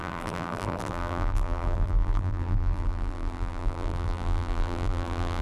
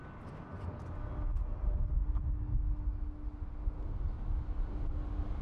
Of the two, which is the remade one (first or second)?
first